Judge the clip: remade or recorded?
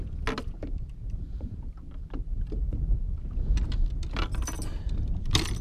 recorded